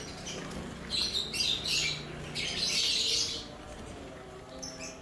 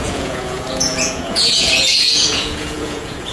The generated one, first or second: second